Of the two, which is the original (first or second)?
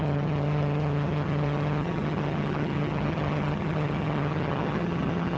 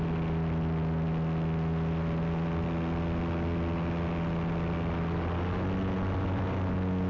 second